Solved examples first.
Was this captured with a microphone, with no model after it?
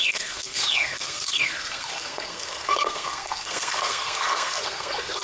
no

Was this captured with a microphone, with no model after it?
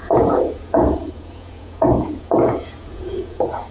no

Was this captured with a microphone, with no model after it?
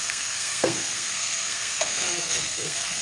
no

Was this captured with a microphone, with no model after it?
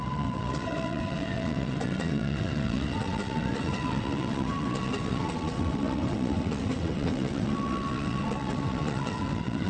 no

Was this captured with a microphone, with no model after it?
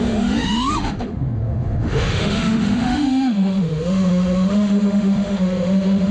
no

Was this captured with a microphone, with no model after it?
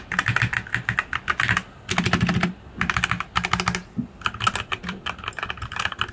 yes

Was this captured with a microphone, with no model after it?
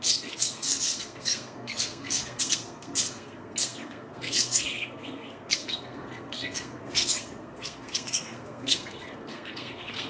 no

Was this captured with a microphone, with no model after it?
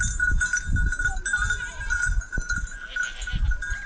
yes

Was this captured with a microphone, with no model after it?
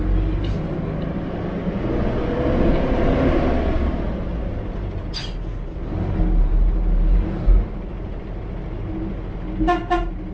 yes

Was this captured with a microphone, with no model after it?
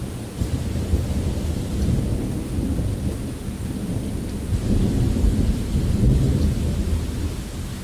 yes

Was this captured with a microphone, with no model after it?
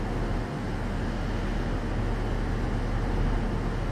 yes